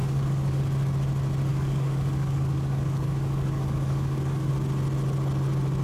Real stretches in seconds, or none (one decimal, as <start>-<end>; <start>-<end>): 0.6-1.5; 4.5-5.8